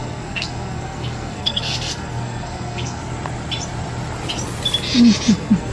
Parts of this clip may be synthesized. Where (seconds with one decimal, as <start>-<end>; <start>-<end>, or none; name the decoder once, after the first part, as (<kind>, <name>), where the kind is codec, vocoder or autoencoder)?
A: 0.0-3.0 (codec, SNAC); 5.3-5.7